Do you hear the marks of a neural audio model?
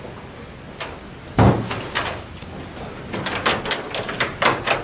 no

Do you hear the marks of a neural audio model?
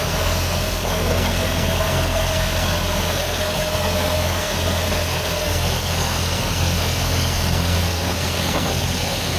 yes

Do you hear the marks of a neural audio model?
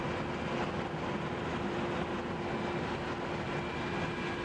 no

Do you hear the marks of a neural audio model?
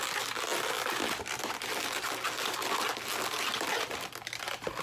no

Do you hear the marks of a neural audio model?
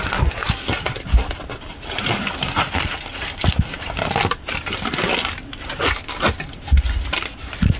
no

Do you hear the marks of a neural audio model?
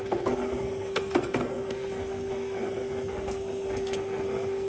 yes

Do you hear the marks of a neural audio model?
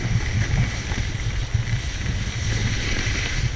no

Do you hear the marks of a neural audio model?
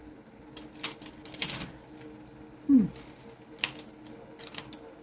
no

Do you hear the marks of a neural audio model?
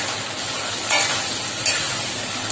no